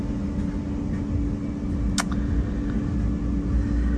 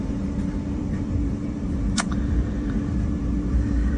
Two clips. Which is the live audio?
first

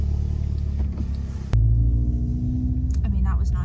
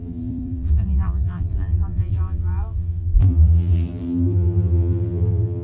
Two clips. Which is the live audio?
first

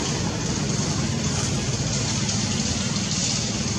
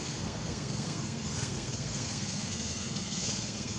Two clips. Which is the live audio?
first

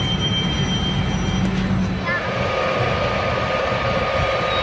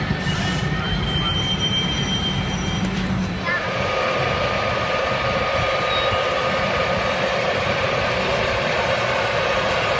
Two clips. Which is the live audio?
first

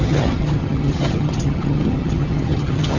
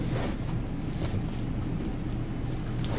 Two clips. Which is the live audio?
second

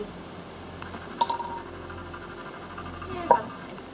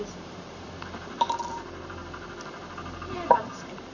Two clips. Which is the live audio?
first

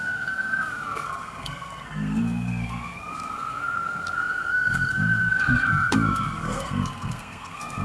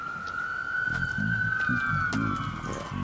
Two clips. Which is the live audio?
second